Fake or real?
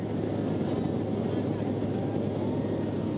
real